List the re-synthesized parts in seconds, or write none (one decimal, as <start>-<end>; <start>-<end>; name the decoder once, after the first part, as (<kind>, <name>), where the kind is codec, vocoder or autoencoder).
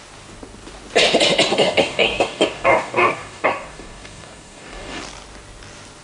1.5-5.0 (codec, DAC)